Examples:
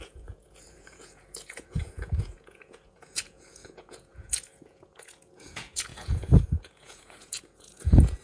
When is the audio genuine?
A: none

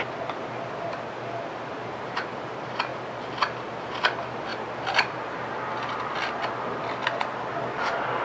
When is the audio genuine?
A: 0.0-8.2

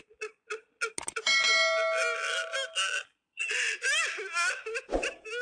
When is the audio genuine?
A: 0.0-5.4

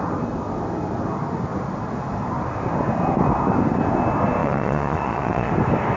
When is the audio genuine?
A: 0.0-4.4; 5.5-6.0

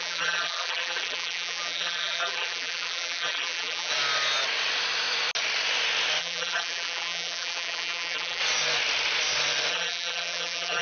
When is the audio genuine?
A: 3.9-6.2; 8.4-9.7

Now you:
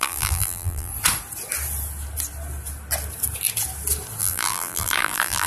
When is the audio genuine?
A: 0.9-4.2

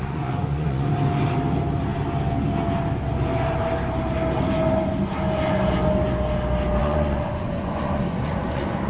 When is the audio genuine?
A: 0.9-6.8